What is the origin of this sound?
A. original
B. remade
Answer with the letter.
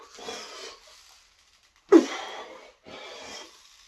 A